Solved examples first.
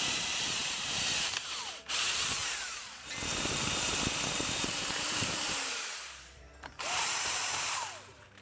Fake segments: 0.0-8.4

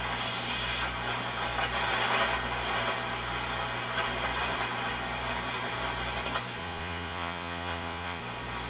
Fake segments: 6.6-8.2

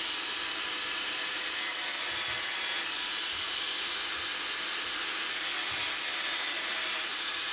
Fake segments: none

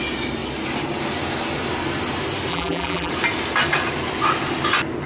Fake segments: 2.5-3.1

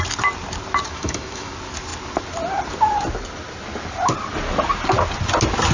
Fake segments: 0.9-1.5